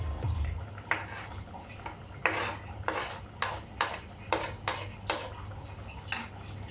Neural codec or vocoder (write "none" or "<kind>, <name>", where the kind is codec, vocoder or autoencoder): none